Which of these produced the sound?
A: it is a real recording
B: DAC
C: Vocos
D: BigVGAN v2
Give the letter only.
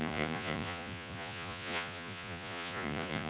C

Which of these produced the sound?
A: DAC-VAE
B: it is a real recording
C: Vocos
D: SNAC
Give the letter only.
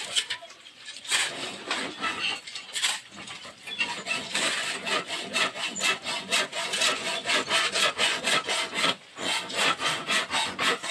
C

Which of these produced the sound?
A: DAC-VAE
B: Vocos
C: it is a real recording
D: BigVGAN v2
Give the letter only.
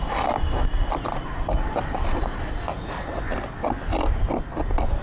C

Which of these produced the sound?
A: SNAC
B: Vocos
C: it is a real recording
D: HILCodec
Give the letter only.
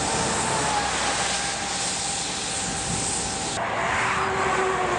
C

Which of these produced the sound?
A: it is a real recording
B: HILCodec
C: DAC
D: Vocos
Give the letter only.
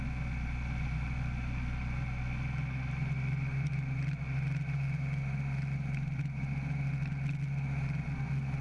A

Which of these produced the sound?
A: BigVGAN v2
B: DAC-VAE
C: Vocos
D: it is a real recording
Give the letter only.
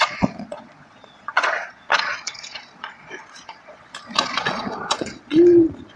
C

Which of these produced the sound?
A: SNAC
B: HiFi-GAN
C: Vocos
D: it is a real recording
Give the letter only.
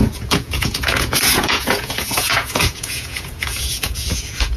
C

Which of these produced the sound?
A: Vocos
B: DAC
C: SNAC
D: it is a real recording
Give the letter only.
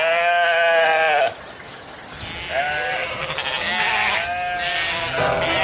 D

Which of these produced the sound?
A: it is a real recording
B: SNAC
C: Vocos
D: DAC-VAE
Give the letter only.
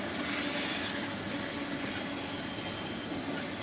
A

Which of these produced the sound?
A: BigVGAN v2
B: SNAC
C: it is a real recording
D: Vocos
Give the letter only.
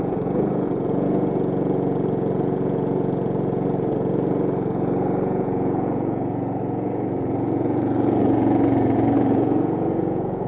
D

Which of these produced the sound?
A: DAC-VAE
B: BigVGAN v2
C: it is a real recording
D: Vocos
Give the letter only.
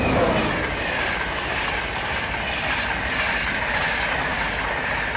C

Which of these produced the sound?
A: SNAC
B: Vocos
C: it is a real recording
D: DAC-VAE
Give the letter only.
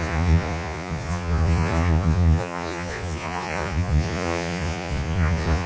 B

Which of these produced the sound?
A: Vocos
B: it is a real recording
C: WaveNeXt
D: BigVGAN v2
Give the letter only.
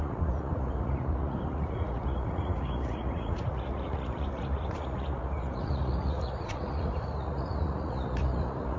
A